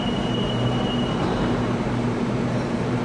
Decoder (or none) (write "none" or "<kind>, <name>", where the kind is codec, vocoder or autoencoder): vocoder, BigVGAN v2